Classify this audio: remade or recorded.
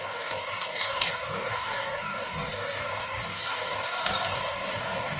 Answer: remade